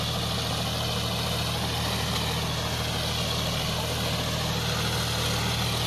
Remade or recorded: recorded